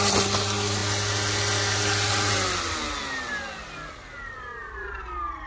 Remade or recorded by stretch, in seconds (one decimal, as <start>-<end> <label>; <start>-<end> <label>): 0.0-4.6 recorded; 4.6-5.5 remade

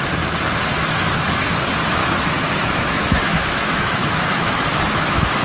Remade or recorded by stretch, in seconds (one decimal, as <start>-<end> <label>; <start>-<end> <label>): 0.0-2.0 recorded; 2.0-5.4 remade